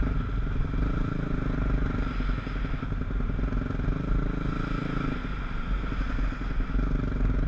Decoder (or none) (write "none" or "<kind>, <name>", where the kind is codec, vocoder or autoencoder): none